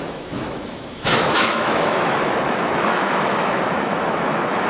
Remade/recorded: remade